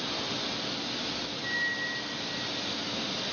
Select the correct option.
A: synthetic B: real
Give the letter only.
B